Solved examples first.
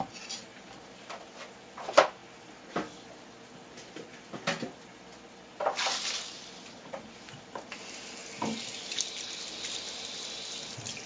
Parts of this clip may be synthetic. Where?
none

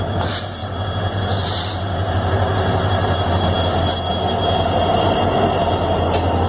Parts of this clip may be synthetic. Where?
none